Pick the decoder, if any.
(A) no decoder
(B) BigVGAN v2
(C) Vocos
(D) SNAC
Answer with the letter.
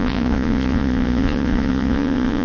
C